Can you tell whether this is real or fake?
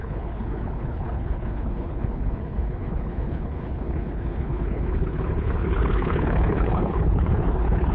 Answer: fake